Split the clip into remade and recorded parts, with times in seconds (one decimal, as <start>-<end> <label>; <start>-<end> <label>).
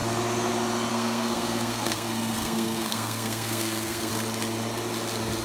0.0-0.9 recorded; 0.9-4.1 remade; 4.1-5.4 recorded